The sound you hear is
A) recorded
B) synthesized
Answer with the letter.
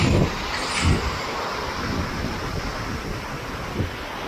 A